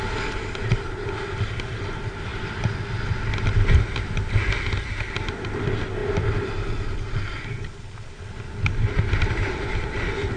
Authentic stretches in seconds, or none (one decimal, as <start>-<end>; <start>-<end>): 0.0-10.4